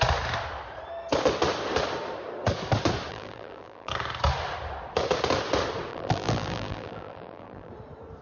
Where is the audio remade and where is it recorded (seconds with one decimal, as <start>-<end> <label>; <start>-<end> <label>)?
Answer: 0.0-3.1 recorded; 3.1-3.9 remade; 3.9-5.9 recorded; 5.9-7.7 remade; 7.7-8.2 recorded

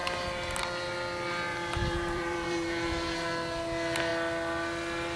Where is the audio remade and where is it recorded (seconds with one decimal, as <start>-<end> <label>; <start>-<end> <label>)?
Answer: 0.0-0.6 remade; 0.6-1.5 recorded; 1.5-3.3 remade; 3.3-5.2 recorded

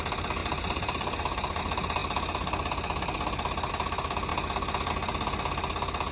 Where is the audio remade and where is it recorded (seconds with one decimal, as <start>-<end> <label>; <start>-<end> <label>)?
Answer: 0.0-0.4 recorded; 0.4-1.6 remade; 1.6-6.1 recorded

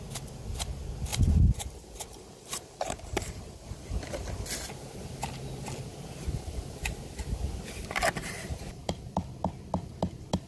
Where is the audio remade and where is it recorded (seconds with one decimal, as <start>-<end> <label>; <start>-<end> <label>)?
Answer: 0.0-1.1 recorded; 1.1-3.4 remade; 3.4-8.2 recorded; 8.2-8.9 remade; 8.9-10.5 recorded

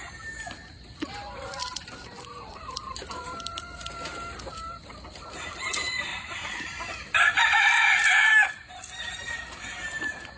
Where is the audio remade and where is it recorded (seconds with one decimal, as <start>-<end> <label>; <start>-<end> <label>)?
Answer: 0.0-1.6 recorded; 1.6-2.5 remade; 2.5-6.1 recorded; 6.1-8.8 remade; 8.8-10.4 recorded